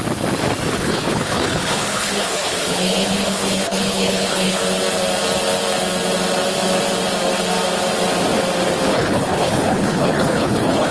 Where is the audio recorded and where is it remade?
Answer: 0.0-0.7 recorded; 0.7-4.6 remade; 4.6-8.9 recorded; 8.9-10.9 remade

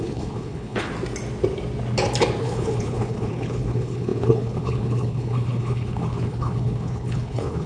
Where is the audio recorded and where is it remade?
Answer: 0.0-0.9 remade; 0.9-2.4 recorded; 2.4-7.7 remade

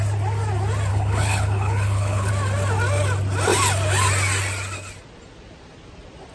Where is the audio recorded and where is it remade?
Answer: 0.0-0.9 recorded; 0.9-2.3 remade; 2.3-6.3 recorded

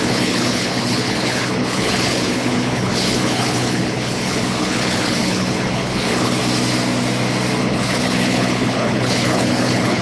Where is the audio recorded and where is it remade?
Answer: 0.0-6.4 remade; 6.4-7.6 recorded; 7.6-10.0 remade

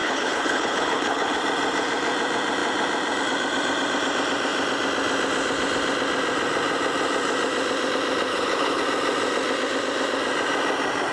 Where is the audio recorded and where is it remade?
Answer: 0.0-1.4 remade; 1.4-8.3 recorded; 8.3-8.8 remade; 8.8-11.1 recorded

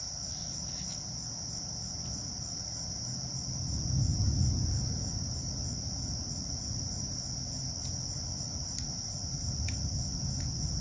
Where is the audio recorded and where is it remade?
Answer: 0.0-10.8 recorded

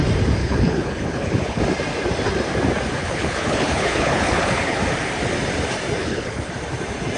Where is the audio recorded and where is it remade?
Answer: 0.0-0.4 recorded; 0.4-1.6 remade; 1.6-3.0 recorded; 3.0-4.8 remade; 4.8-6.0 recorded; 6.0-6.5 remade; 6.5-7.2 recorded

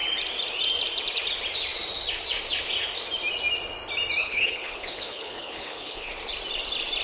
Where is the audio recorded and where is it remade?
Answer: 0.0-4.2 recorded; 4.2-6.1 remade; 6.1-7.0 recorded